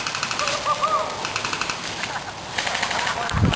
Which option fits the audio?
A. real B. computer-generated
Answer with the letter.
A